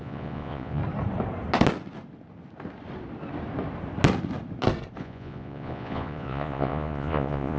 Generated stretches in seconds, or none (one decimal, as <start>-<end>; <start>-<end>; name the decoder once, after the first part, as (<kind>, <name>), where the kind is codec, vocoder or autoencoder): 0.0-0.8 (vocoder, Vocos); 5.0-7.6